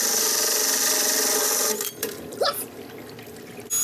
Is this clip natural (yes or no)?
yes